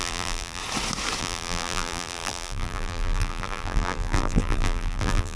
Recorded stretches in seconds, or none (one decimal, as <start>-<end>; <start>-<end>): 0.6-1.2